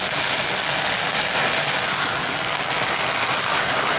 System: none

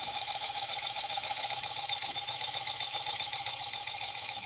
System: autoencoder, DAC-VAE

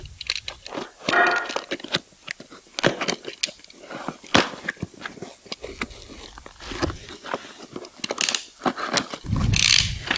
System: none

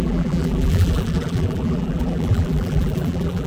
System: vocoder, BigVGAN v2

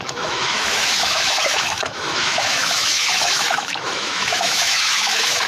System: autoencoder, DAC-VAE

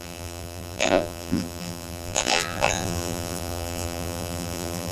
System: vocoder, BigVGAN v2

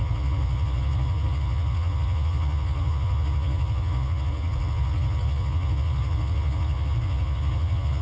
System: vocoder, Vocos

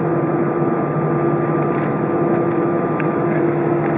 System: none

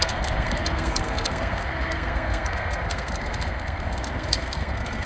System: codec, SNAC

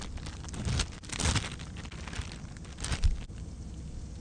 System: none